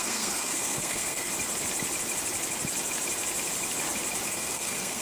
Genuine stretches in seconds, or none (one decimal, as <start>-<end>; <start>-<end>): 1.3-4.3